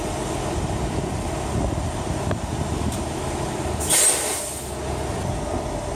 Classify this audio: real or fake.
real